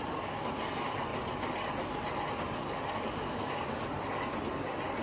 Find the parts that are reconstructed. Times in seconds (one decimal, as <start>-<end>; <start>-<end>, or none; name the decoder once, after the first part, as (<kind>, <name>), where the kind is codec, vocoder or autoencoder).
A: 3.2-3.7 (codec, DAC)